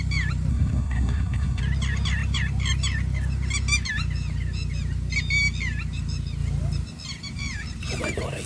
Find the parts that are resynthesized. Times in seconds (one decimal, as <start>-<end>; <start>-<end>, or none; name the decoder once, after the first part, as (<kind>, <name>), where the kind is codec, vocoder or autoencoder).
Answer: 0.5-1.6 (codec, SNAC)